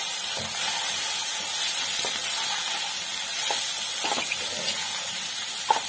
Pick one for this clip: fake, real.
real